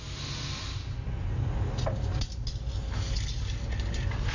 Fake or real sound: real